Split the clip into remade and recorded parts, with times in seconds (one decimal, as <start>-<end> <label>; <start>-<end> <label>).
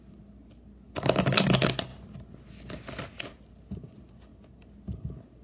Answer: 0.0-5.4 recorded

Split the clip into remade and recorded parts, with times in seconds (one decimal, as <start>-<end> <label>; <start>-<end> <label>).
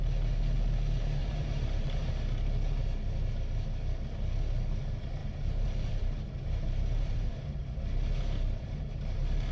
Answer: 0.0-1.2 recorded; 1.2-2.1 remade; 2.1-5.2 recorded; 5.2-7.3 remade; 7.3-9.5 recorded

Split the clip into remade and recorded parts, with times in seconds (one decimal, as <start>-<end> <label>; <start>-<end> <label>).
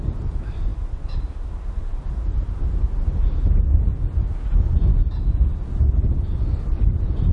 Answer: 0.0-7.3 recorded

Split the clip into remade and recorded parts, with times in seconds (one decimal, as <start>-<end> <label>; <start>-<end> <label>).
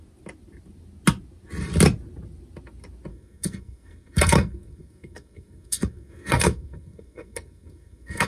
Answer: 0.0-3.1 recorded; 3.1-8.3 remade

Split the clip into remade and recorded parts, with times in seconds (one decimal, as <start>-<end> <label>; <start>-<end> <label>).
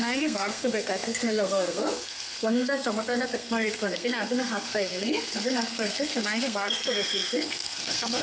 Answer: 0.0-8.2 remade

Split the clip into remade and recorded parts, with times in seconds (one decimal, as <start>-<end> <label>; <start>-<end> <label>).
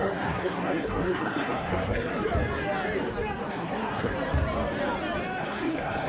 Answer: 0.0-2.1 remade; 2.1-3.5 recorded; 3.5-4.1 remade; 4.1-5.4 recorded; 5.4-6.1 remade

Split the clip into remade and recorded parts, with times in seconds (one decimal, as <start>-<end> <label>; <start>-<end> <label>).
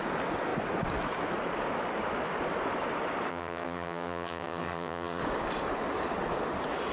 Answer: 0.0-3.3 recorded; 3.3-5.2 remade; 5.2-6.9 recorded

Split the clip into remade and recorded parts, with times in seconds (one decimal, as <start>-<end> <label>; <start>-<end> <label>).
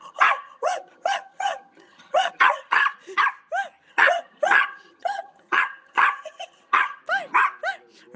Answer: 0.0-2.8 remade; 2.8-3.9 recorded; 3.9-7.0 remade; 7.0-8.2 recorded